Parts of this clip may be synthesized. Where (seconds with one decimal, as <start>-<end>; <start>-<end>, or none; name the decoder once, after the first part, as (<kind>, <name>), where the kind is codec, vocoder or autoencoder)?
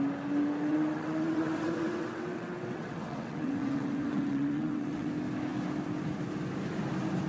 0.7-5.1 (vocoder, WaveNeXt)